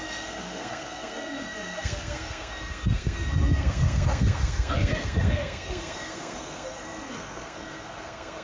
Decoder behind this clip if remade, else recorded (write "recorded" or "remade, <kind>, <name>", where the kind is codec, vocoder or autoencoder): remade, codec, SNAC